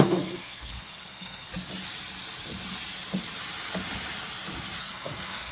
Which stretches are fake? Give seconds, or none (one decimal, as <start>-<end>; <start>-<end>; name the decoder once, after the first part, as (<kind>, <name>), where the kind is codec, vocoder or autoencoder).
0.0-1.5 (codec, SNAC); 4.8-5.5